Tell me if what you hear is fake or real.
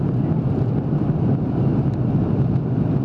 real